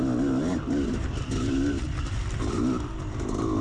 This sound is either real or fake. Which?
real